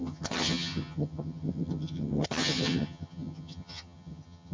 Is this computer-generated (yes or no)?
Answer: yes